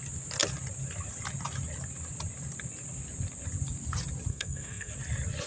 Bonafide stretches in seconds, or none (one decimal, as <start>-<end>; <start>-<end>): 0.0-4.3; 4.9-5.5